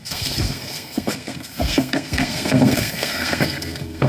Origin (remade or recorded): remade